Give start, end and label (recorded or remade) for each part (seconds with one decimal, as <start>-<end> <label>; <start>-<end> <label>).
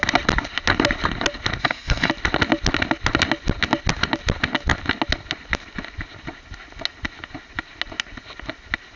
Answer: 0.0-1.6 recorded; 1.6-2.1 remade; 2.1-9.0 recorded